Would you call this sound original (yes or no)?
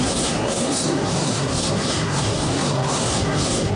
no